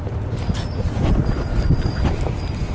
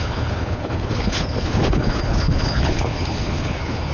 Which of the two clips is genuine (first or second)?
first